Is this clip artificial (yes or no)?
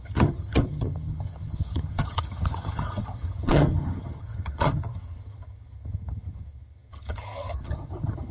yes